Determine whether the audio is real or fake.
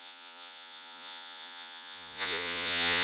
fake